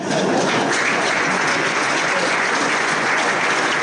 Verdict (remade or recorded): remade